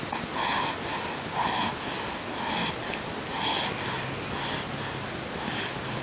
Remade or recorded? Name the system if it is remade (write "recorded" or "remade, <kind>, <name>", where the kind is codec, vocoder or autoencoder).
recorded